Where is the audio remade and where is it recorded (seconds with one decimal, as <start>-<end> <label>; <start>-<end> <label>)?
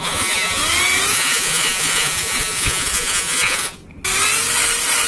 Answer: 0.0-0.6 remade; 0.6-1.1 recorded; 1.1-3.8 remade; 3.8-5.1 recorded